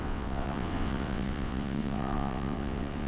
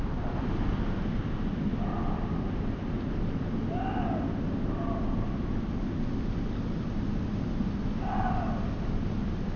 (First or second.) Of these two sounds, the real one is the second